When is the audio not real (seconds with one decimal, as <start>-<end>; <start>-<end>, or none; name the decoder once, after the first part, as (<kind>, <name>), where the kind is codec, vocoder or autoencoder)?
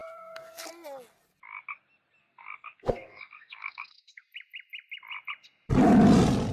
0.0-0.7 (codec, SNAC); 2.2-4.2